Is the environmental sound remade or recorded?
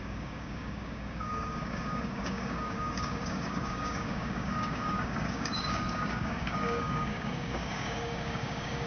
remade